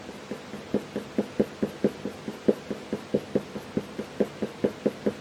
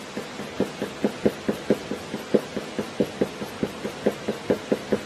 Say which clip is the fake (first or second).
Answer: second